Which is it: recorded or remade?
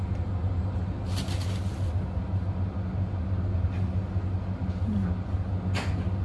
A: recorded